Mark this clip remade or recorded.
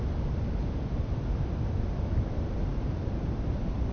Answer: recorded